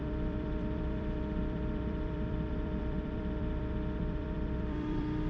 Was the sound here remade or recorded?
remade